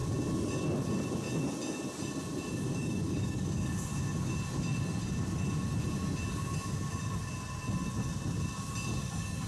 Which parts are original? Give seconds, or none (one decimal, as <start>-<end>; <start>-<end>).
0.0-2.7; 3.9-9.0